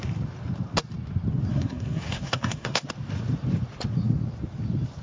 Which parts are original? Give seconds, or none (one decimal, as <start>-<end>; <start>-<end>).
0.0-1.5; 2.9-5.0